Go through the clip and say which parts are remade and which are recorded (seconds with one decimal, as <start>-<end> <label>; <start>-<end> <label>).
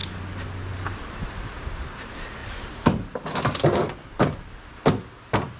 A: 0.0-0.7 recorded; 0.7-2.4 remade; 2.4-5.6 recorded